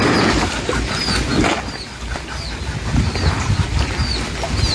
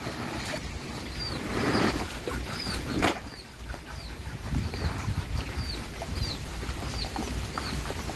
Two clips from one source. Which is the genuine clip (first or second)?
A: first